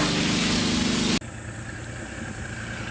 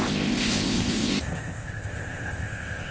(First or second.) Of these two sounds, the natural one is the first